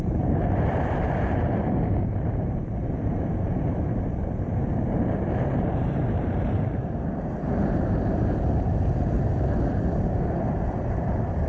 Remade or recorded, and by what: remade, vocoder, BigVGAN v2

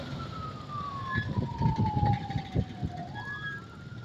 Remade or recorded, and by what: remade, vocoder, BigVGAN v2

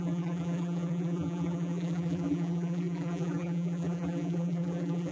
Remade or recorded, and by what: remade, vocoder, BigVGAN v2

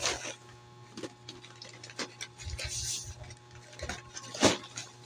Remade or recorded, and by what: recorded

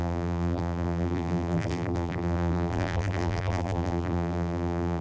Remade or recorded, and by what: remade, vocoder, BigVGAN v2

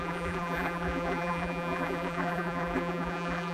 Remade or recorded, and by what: remade, vocoder, BigVGAN v2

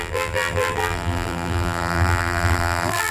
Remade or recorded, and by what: remade, vocoder, BigVGAN v2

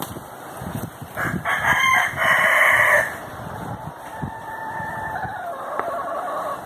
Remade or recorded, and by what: remade, vocoder, BigVGAN v2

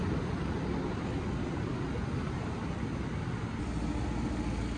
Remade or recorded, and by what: recorded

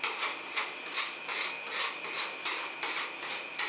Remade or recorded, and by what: recorded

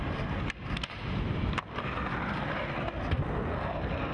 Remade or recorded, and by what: recorded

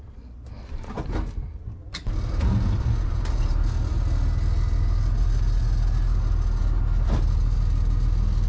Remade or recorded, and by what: recorded